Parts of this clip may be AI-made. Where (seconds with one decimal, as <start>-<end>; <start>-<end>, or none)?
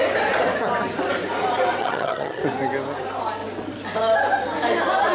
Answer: 1.8-2.4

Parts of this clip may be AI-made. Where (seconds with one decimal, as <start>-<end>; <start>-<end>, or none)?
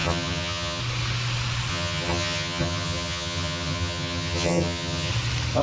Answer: 0.0-0.8; 1.7-5.1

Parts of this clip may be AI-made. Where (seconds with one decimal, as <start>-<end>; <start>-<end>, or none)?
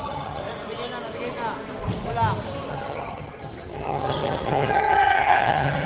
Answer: 0.0-0.4; 2.7-5.9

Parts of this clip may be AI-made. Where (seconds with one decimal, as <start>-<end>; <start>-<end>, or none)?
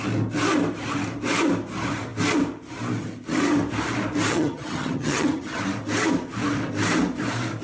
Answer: 4.3-5.6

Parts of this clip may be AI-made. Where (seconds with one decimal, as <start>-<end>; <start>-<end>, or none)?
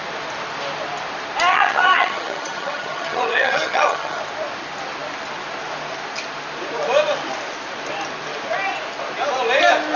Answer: 1.5-4.2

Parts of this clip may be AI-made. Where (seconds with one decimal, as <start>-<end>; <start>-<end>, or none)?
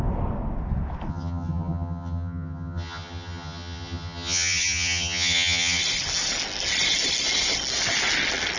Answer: 1.1-5.8